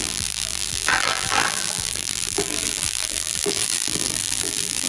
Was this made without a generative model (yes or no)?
no